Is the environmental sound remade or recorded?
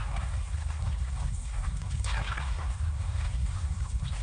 remade